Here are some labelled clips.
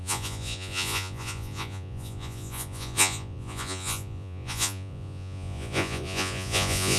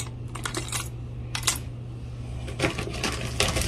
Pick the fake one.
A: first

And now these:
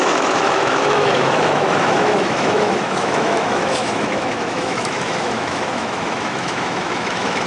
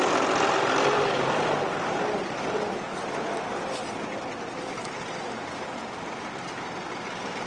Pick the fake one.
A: first